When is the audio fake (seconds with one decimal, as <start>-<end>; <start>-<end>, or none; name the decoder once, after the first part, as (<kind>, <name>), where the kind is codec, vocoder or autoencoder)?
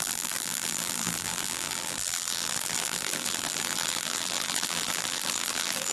0.0-5.9 (vocoder, BigVGAN v2)